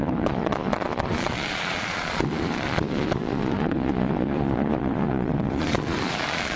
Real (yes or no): no